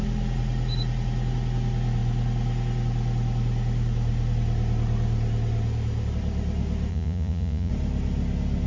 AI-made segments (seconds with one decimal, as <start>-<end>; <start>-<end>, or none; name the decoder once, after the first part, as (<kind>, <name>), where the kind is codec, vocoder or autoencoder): 6.9-7.7 (vocoder, Vocos)